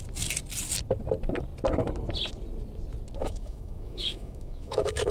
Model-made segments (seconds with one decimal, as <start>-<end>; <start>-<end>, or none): 3.2-5.1